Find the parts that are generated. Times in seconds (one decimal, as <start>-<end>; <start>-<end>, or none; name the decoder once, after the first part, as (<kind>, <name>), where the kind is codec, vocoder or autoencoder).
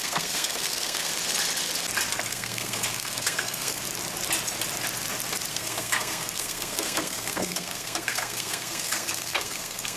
0.0-1.1 (codec, SNAC); 2.3-3.8; 5.5-10.0